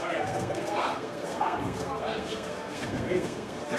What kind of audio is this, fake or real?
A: fake